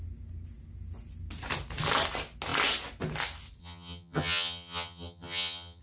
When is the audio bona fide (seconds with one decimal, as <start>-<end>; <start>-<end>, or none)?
0.0-3.6